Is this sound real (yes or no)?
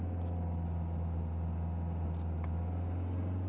yes